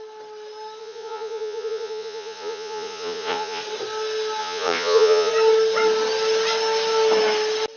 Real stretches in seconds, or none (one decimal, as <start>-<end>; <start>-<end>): 0.0-0.8; 3.6-4.4; 5.3-7.8